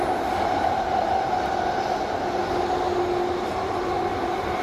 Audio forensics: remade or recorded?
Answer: recorded